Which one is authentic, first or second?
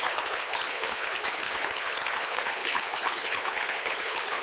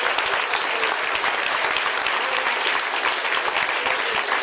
second